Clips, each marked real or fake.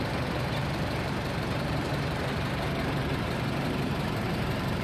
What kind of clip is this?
fake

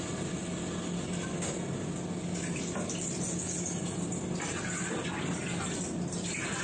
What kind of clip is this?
real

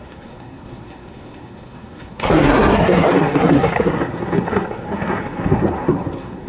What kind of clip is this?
fake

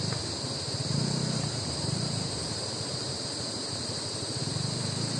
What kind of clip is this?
fake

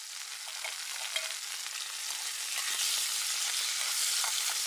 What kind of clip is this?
real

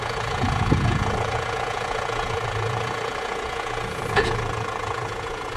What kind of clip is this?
fake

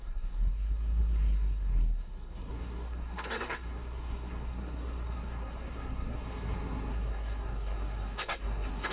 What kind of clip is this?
fake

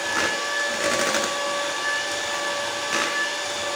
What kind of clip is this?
real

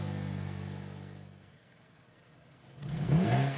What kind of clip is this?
fake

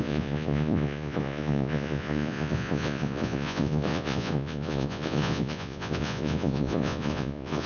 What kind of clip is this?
fake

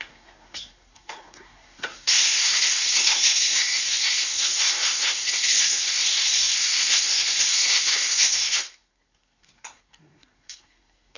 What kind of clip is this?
fake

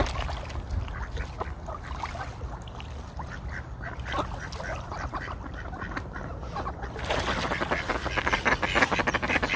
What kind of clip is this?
real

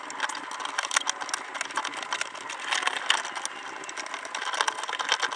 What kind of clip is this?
real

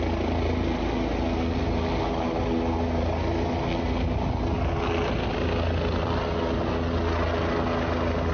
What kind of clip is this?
real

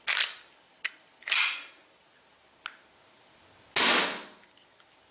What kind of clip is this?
real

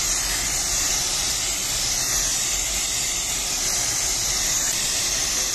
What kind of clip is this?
fake